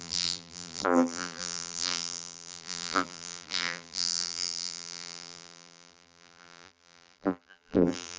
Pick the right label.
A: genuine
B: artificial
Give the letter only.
B